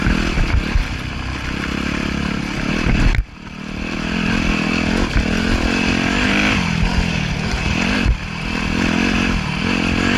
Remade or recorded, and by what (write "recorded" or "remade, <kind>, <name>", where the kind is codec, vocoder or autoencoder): recorded